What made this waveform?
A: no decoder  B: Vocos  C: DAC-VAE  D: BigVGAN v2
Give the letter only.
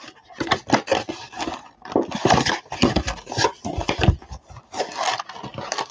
A